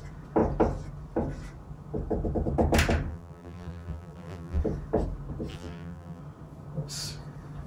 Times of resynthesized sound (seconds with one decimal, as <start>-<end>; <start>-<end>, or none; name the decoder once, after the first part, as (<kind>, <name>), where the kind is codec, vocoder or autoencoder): 3.1-4.6 (vocoder, BigVGAN v2); 5.5-6.2

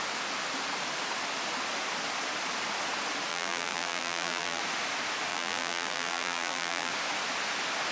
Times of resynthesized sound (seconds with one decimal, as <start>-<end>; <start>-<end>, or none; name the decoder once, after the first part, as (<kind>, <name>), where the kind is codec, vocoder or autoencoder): 3.3-4.6 (vocoder, BigVGAN v2); 5.3-6.9